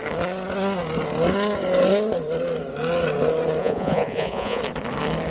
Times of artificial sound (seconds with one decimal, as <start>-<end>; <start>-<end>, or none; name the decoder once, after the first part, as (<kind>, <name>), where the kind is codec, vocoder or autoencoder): 3.6-4.6 (vocoder, Vocos)